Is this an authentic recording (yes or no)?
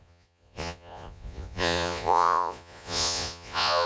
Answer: no